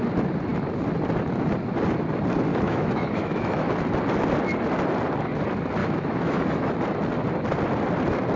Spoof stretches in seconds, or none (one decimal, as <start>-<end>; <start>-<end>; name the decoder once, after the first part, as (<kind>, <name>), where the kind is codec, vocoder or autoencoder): 2.5-3.7 (autoencoder, DAC-VAE); 5.8-6.7